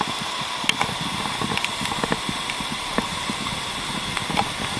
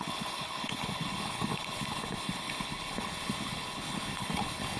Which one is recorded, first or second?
first